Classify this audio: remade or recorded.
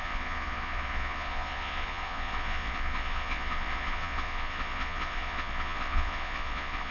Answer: remade